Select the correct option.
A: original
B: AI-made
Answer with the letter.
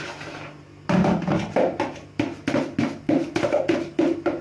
A